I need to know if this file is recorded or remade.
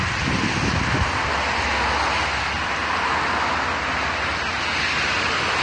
recorded